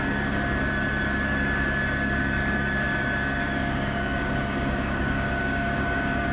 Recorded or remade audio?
remade